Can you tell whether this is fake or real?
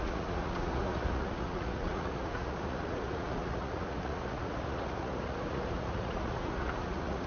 fake